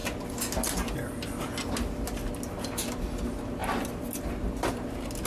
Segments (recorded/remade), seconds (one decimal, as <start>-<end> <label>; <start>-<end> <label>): 0.0-5.3 recorded

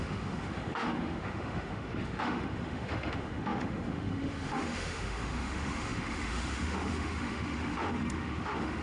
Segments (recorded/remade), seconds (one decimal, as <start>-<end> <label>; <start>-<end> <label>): 0.0-8.8 remade

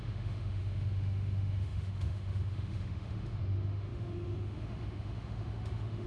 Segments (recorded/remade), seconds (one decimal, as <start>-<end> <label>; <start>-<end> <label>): 0.0-6.1 remade

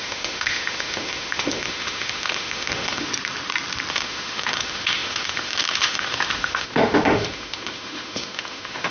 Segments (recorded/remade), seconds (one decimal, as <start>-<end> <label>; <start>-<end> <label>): 0.0-3.1 remade; 3.1-3.9 recorded; 3.9-8.9 remade

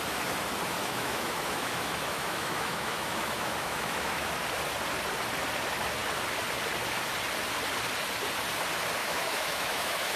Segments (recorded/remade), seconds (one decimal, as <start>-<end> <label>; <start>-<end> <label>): 0.0-0.8 recorded; 0.8-4.3 remade; 4.3-9.0 recorded; 9.0-10.2 remade

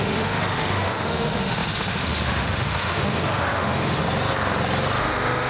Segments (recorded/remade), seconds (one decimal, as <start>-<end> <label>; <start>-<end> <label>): 0.0-4.0 remade; 4.0-5.0 recorded; 5.0-5.5 remade

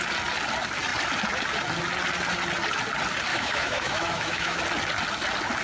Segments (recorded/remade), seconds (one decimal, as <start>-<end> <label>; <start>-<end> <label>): 0.0-3.3 recorded; 3.3-4.6 remade; 4.6-5.6 recorded